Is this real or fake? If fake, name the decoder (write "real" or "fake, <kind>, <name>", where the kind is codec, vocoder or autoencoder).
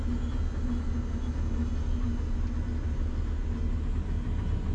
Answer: real